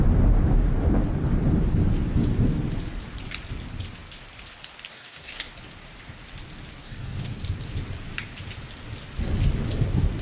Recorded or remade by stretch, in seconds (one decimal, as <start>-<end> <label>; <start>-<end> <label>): 0.0-4.9 recorded; 4.9-5.5 remade; 5.5-6.8 recorded; 6.8-7.3 remade; 7.3-10.2 recorded